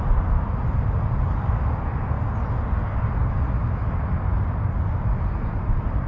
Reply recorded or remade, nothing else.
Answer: recorded